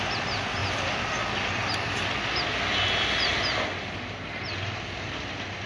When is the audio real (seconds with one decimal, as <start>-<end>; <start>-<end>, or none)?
0.0-5.7